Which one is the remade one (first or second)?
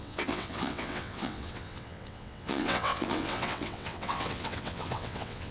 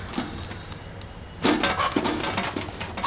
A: first